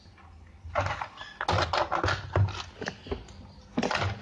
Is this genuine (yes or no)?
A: yes